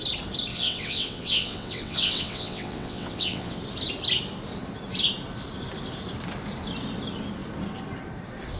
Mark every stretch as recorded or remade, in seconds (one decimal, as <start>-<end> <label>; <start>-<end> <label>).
0.0-0.5 recorded; 0.5-3.6 remade; 3.6-8.6 recorded